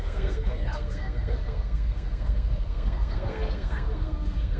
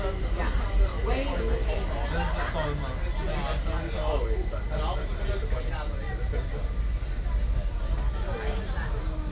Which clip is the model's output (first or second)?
first